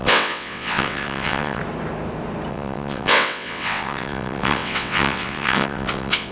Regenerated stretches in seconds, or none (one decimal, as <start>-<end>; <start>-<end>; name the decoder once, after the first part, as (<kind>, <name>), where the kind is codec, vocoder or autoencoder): 0.0-1.6 (vocoder, WaveNeXt); 2.5-6.3